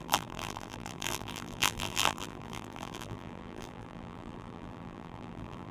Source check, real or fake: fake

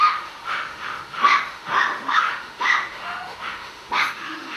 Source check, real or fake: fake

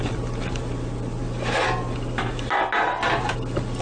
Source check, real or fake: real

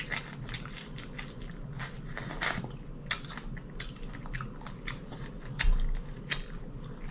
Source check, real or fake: real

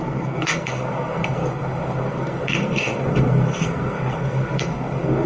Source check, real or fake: fake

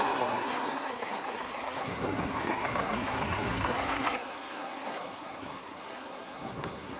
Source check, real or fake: fake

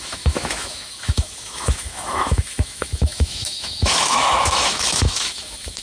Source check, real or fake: fake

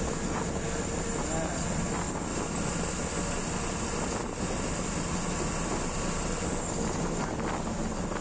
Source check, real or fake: real